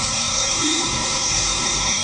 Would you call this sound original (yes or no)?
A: no